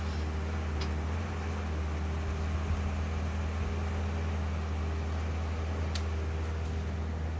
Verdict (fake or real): real